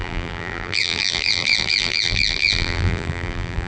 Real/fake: fake